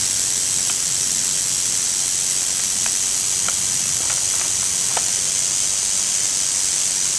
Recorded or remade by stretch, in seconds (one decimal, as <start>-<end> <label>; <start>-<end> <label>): 0.0-7.2 recorded